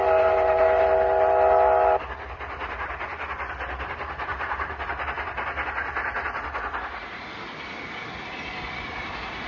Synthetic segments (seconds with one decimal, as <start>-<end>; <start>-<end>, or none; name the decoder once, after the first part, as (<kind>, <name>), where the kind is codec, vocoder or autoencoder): 4.3-5.0 (vocoder, BigVGAN v2)

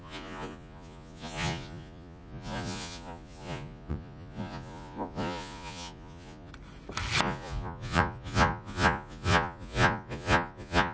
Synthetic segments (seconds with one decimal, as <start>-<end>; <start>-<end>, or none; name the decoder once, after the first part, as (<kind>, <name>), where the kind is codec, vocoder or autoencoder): 0.0-6.5 (vocoder, Vocos); 7.2-10.9